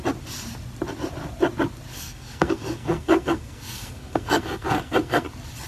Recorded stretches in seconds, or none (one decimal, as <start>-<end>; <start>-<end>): 0.0-1.9; 5.3-5.7